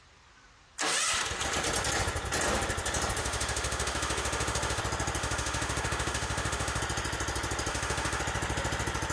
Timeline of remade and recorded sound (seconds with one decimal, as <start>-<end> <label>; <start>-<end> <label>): 0.0-3.2 recorded; 3.2-4.8 remade; 4.8-5.2 recorded; 5.2-6.8 remade; 6.8-7.7 recorded; 7.7-8.2 remade; 8.2-9.1 recorded